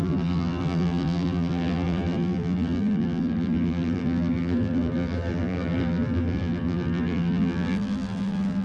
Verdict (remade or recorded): remade